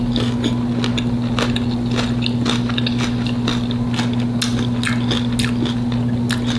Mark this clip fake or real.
real